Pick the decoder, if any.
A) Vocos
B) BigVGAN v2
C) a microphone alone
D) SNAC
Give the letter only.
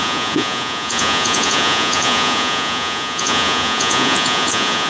A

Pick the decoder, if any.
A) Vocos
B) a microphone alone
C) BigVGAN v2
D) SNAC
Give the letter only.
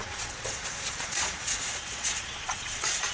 A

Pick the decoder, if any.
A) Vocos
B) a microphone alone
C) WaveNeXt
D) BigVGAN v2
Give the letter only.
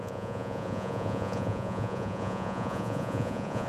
A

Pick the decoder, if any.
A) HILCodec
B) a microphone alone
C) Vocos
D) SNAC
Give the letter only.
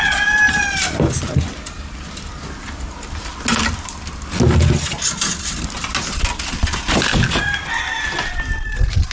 B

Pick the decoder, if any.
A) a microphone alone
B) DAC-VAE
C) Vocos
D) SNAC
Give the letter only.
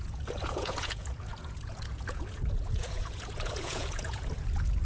C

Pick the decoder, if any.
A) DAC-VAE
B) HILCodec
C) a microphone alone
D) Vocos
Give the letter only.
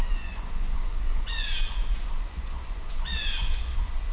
D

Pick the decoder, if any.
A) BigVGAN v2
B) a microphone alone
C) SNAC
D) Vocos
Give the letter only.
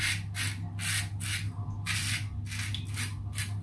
B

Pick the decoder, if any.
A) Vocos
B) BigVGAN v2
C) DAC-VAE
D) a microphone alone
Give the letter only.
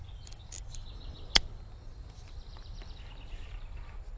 D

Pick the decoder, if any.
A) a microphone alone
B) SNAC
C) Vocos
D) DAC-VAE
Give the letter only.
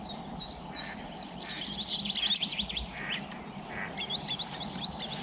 A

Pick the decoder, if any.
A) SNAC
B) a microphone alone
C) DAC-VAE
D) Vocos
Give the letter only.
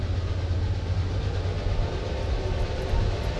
B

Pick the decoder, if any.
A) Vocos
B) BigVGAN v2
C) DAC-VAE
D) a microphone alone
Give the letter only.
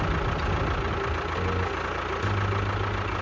D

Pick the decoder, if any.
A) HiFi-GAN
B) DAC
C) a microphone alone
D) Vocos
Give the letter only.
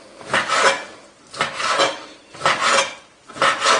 C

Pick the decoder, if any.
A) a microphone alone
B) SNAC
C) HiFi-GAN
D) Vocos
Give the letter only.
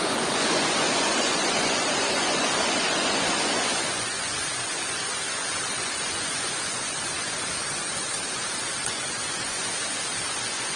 D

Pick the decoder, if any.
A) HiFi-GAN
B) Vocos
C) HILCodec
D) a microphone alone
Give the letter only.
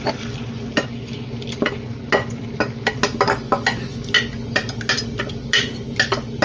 D